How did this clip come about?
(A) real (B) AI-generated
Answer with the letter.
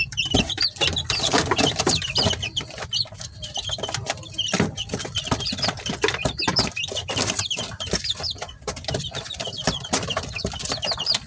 B